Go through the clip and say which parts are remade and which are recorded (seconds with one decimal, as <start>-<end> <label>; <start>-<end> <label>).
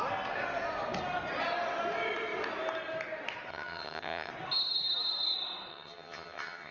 0.0-3.5 recorded; 3.5-4.3 remade; 4.3-5.7 recorded; 5.7-6.7 remade